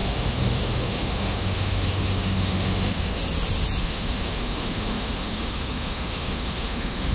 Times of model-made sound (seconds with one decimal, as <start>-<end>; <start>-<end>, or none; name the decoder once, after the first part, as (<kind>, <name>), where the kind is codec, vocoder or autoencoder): 0.0-3.2 (autoencoder, DAC-VAE); 3.8-7.1